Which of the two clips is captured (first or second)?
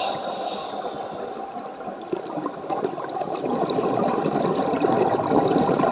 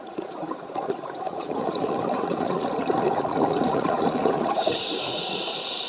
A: first